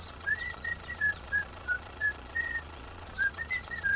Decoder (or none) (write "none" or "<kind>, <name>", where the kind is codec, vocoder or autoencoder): vocoder, Vocos